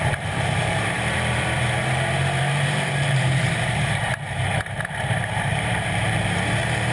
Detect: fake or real fake